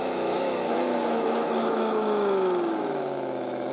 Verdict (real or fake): fake